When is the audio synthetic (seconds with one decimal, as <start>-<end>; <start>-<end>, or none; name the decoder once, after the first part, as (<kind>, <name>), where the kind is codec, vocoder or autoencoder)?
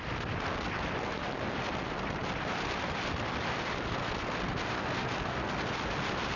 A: none